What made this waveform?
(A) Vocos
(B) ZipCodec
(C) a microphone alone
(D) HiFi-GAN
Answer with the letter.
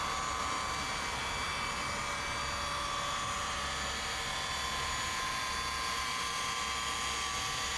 C